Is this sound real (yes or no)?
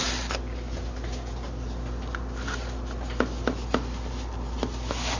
yes